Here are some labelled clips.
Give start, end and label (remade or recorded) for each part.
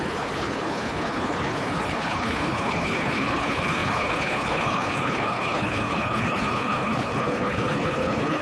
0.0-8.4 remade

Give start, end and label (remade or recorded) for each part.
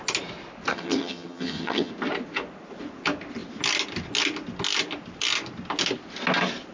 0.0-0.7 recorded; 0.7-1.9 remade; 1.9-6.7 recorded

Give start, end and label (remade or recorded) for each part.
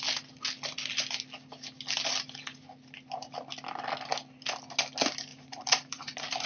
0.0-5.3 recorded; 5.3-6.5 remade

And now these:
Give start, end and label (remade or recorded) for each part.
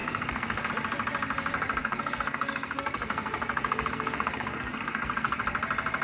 0.0-0.7 remade; 0.7-1.8 recorded; 1.8-5.4 remade; 5.4-6.0 recorded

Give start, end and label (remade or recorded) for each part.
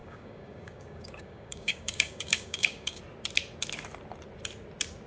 0.0-3.0 remade; 3.0-5.1 recorded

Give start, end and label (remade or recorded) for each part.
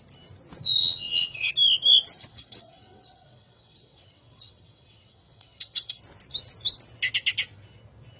0.0-0.8 recorded; 0.8-1.5 remade; 1.5-2.2 recorded; 2.2-6.0 remade; 6.0-8.2 recorded